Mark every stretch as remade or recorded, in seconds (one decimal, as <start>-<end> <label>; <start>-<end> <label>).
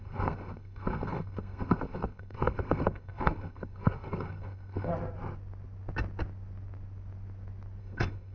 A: 0.0-4.9 remade; 4.9-7.8 recorded; 7.8-8.3 remade